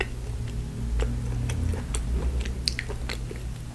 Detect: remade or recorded recorded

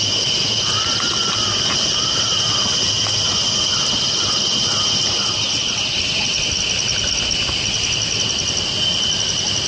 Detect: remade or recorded recorded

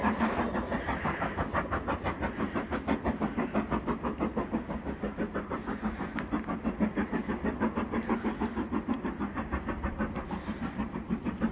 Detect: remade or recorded recorded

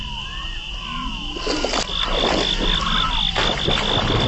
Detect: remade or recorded recorded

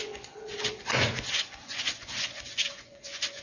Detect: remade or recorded remade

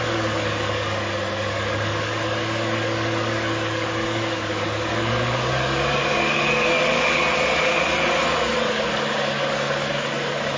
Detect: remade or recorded remade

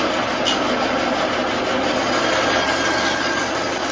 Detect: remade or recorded recorded